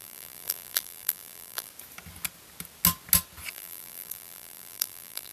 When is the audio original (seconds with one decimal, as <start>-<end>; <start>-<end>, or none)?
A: 1.7-3.5